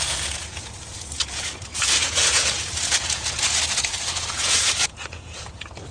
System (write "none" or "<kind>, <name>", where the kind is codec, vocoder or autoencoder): vocoder, Vocos